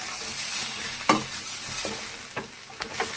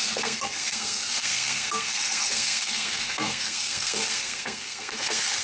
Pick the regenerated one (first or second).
second